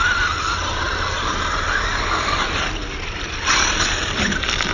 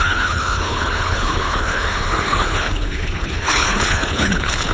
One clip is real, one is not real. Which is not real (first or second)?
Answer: second